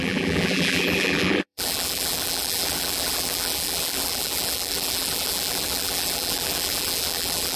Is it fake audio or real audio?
fake